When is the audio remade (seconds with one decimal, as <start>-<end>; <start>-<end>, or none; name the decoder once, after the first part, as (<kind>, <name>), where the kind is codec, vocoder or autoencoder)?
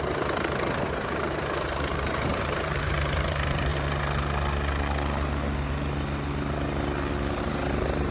0.0-3.7 (vocoder, BigVGAN v2); 7.4-8.1